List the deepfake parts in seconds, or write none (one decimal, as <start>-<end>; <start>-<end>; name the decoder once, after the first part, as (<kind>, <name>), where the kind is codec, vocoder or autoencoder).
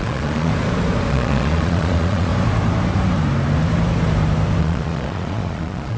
0.0-0.5 (vocoder, Vocos); 1.1-2.3; 4.6-6.0